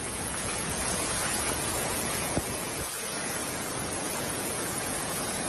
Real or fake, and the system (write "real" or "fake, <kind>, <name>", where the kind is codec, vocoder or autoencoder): fake, vocoder, Vocos